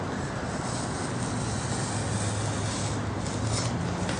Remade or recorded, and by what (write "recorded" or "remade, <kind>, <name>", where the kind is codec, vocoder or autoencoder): recorded